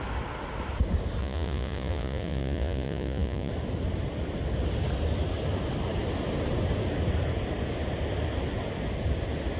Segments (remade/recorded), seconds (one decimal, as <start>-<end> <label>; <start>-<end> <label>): 0.0-1.2 recorded; 1.2-3.5 remade; 3.5-9.6 recorded